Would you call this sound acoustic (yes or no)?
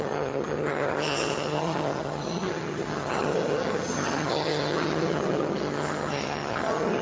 no